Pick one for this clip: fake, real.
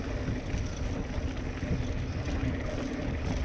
real